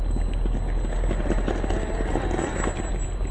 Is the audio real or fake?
real